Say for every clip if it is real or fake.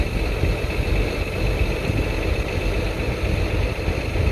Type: fake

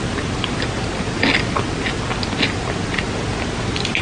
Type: real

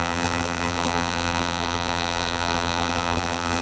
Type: fake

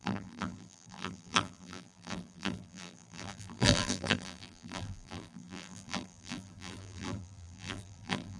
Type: fake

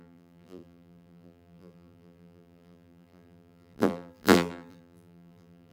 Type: fake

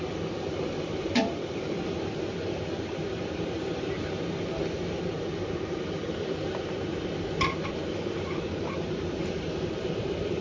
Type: fake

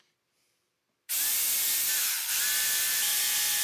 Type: fake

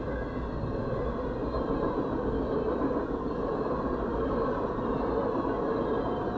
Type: real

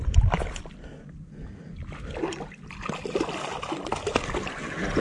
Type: real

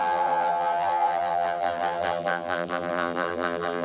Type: fake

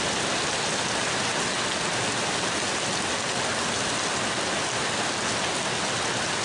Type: real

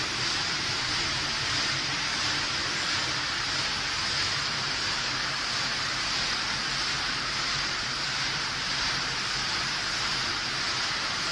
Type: fake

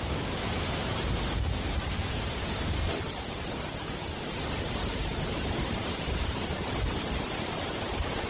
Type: fake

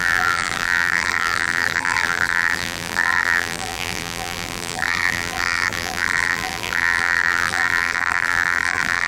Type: fake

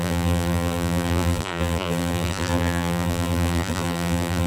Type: fake